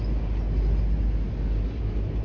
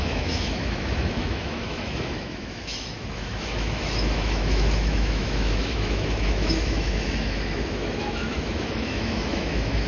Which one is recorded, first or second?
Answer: first